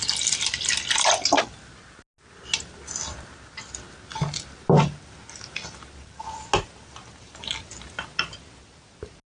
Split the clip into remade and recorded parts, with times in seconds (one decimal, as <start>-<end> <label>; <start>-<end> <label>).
0.0-9.3 recorded